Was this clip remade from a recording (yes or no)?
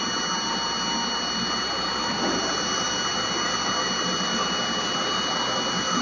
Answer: no